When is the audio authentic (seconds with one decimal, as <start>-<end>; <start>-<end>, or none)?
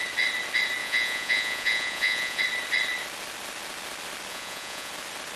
0.0-0.8; 2.4-4.3; 4.9-5.4